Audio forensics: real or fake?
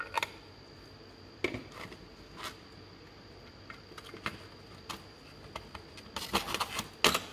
real